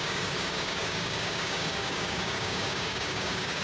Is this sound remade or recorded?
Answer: remade